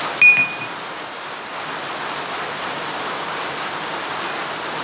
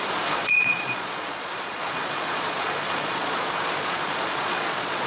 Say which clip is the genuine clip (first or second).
first